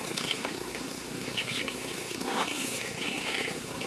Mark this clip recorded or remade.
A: remade